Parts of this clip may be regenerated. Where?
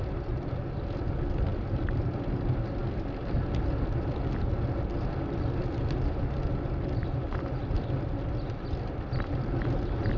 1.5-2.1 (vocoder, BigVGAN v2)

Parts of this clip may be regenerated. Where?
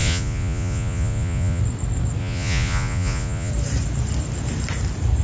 0.0-1.6 (vocoder, Vocos); 2.2-3.5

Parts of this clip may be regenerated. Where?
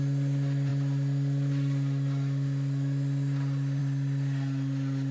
none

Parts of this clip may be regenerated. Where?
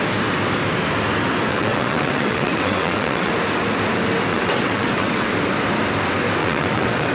1.5-3.3 (vocoder, WaveNeXt); 4.3-5.3; 6.4-7.1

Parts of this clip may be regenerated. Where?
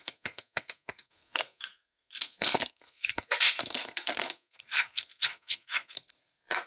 0.0-6.7 (codec, SNAC)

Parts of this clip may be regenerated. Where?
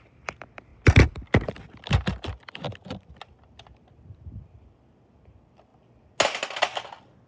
none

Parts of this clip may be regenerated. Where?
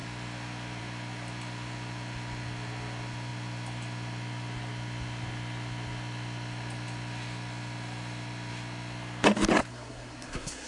9.7-10.7 (codec, SNAC)